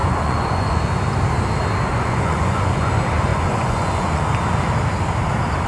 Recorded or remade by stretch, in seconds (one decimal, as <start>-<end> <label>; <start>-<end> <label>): 0.0-0.8 remade; 0.8-1.9 recorded; 1.9-2.9 remade; 2.9-3.3 recorded; 3.3-4.2 remade; 4.2-5.7 recorded